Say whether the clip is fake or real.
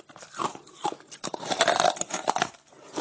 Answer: real